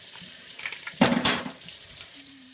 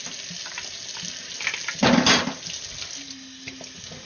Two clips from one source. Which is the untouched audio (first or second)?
second